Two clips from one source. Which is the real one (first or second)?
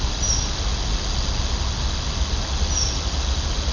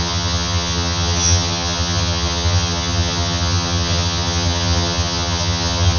first